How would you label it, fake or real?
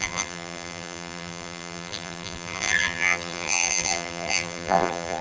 fake